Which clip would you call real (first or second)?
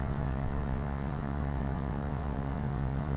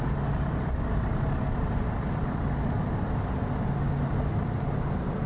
second